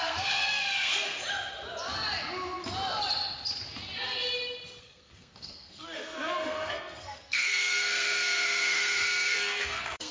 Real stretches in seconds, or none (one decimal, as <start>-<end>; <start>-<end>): 1.2-4.8